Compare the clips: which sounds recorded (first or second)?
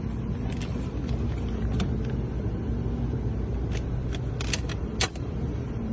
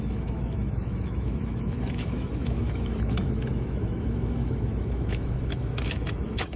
first